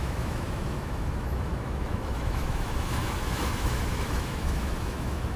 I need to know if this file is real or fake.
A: fake